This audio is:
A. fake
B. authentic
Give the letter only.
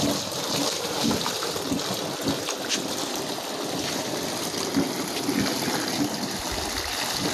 B